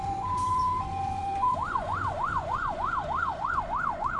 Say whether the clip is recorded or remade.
remade